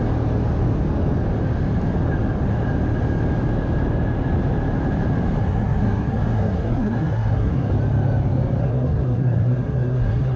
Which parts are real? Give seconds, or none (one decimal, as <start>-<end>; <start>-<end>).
0.0-5.4; 7.7-8.6